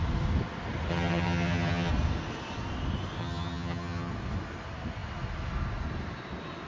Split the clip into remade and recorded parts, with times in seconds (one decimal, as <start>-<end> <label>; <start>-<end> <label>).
0.0-0.9 recorded; 0.9-1.9 remade; 1.9-3.2 recorded; 3.2-4.1 remade; 4.1-6.7 recorded

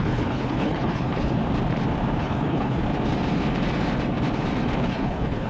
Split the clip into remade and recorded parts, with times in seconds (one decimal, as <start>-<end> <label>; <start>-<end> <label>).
0.0-1.4 remade; 1.4-2.2 recorded; 2.2-2.8 remade; 2.8-4.8 recorded; 4.8-5.5 remade

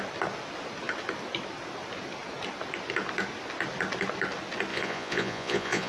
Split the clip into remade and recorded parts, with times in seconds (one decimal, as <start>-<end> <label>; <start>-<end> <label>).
0.0-4.7 recorded; 4.7-5.9 remade

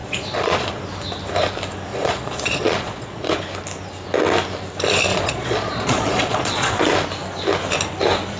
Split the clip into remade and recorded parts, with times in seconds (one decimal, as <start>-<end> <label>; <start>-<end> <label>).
0.0-0.8 remade; 0.8-1.9 recorded; 1.9-3.3 remade; 3.3-5.1 recorded; 5.1-6.8 remade; 6.8-8.4 recorded

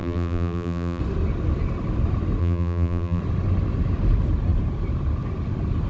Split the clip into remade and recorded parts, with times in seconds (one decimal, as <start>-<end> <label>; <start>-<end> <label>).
0.0-1.0 remade; 1.0-2.4 recorded; 2.4-3.2 remade; 3.2-5.9 recorded

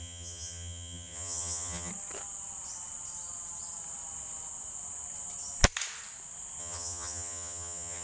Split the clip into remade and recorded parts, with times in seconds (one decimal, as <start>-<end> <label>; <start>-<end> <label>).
0.0-1.9 remade; 1.9-6.6 recorded; 6.6-8.0 remade

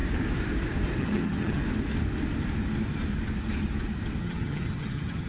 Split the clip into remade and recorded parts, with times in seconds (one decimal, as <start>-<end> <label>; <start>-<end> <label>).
0.0-1.0 recorded; 1.0-1.6 remade; 1.6-4.2 recorded; 4.2-5.3 remade

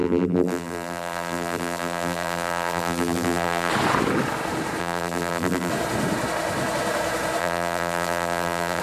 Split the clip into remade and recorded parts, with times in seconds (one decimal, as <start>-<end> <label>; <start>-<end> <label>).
0.0-3.7 remade; 3.7-4.8 recorded; 4.8-5.7 remade; 5.7-7.4 recorded; 7.4-8.8 remade